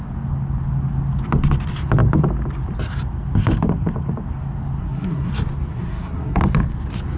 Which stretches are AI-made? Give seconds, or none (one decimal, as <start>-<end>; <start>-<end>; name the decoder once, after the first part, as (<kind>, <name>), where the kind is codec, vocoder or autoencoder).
4.8-5.3 (codec, SNAC); 5.7-6.4